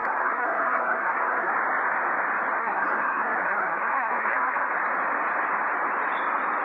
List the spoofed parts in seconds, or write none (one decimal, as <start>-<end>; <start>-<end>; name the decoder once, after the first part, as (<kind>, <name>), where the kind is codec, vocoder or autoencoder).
0.0-1.5 (codec, SNAC); 2.6-4.7